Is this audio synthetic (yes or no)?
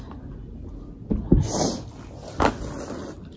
no